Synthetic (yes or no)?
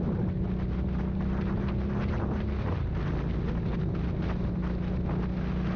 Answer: no